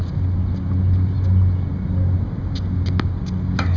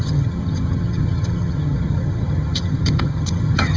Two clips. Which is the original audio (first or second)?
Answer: first